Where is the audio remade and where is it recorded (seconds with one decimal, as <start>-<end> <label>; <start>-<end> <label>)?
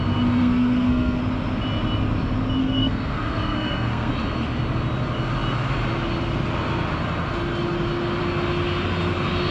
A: 0.0-0.4 recorded; 0.4-1.2 remade; 1.2-2.6 recorded; 2.6-4.1 remade; 4.1-9.5 recorded